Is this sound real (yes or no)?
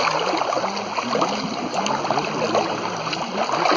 yes